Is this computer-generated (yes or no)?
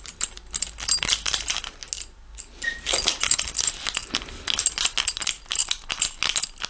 no